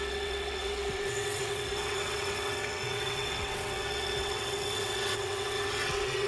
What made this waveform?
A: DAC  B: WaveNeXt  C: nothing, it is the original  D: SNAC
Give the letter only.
B